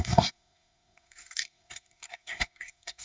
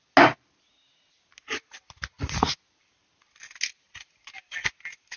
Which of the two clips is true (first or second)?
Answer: second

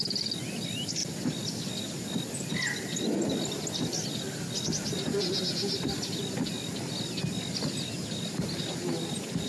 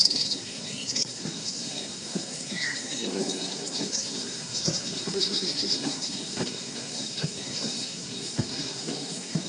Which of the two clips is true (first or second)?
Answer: first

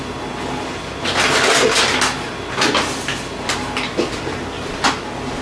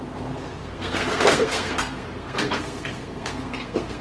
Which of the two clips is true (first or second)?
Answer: first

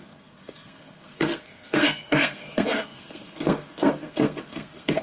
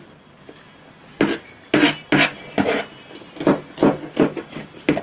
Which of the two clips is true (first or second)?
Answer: second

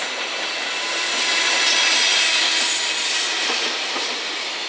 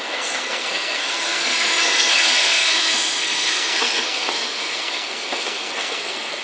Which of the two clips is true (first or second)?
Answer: first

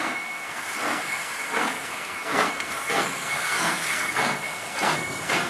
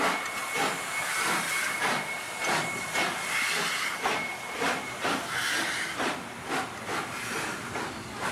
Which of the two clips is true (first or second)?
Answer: second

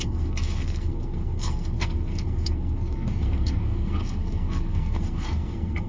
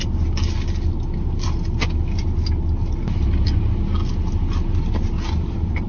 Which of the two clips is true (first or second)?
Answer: second